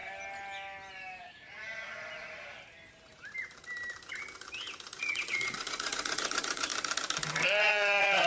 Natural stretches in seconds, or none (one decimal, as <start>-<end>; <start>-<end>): 0.0-5.0; 6.7-7.6